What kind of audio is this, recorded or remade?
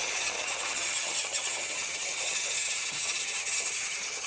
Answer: remade